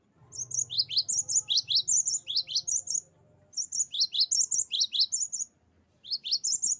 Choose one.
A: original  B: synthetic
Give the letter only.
A